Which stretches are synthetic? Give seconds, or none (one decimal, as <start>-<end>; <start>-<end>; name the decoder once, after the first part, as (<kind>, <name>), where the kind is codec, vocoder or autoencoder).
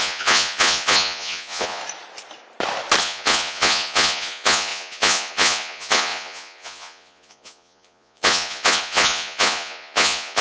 0.0-1.8 (vocoder, Vocos); 3.0-10.4